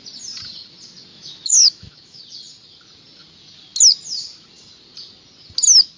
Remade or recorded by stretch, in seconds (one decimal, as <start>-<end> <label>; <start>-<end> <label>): 0.0-1.1 recorded; 1.1-2.2 remade; 2.2-6.0 recorded